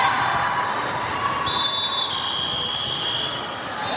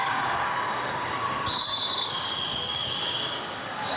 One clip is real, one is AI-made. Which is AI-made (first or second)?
second